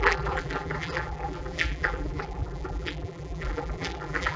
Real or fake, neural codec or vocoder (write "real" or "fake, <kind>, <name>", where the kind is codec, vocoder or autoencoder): fake, vocoder, BigVGAN v2